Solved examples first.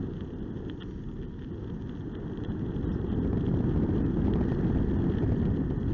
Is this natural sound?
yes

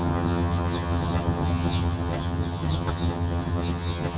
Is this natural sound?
no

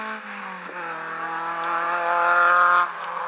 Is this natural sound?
yes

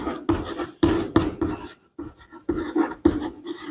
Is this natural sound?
yes